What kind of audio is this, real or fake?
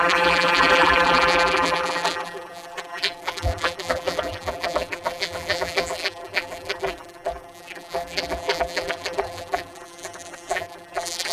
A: fake